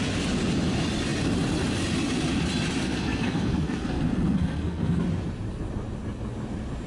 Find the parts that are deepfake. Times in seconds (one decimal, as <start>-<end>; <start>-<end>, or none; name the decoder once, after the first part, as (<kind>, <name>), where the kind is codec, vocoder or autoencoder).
2.8-5.0 (codec, SNAC)